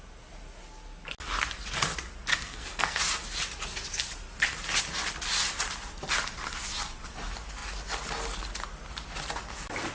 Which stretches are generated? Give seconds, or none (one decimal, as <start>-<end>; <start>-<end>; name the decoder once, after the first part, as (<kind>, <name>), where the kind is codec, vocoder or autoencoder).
2.3-3.0 (codec, SNAC)